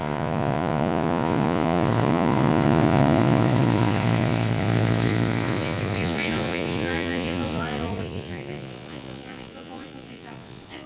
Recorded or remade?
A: remade